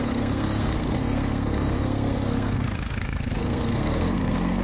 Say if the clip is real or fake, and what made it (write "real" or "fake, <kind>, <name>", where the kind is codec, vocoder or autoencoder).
fake, codec, SNAC